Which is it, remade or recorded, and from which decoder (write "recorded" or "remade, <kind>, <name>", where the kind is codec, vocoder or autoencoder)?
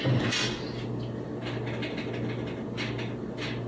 recorded